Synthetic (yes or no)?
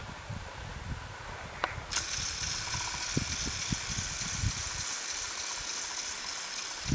no